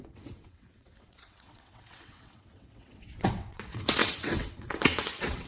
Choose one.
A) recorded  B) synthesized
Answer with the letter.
B